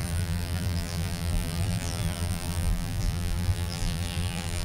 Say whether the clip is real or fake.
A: fake